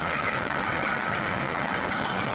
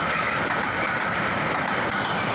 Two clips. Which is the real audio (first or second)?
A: second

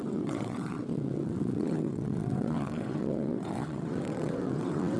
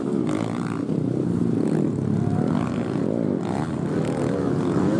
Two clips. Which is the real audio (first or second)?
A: second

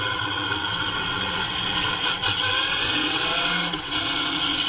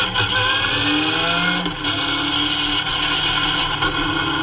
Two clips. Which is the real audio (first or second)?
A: second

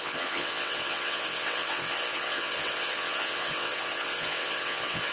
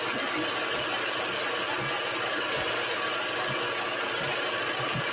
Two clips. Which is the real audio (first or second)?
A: second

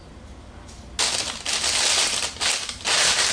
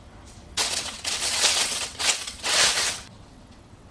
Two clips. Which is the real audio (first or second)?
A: first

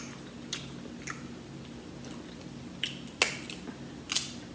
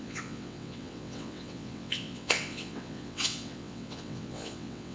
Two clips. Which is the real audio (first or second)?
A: first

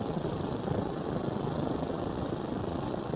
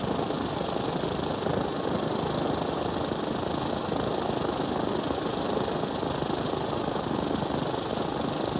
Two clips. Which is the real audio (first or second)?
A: second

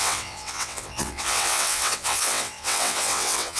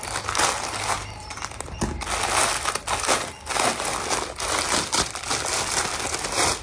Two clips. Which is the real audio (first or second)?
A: second